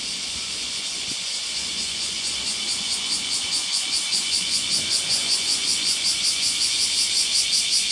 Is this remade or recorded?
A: remade